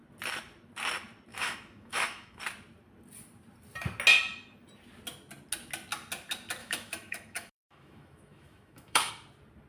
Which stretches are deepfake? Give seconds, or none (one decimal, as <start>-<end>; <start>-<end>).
1.3-2.4; 6.6-9.1